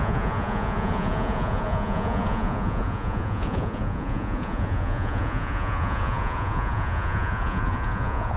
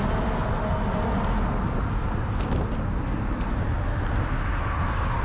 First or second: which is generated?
first